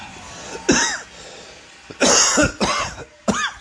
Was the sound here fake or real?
real